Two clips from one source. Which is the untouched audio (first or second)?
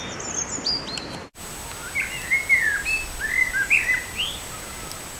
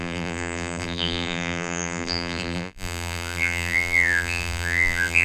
first